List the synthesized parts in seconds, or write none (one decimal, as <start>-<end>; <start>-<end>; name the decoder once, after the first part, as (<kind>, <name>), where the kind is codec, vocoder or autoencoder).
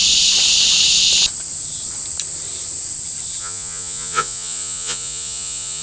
3.4-5.8 (vocoder, Vocos)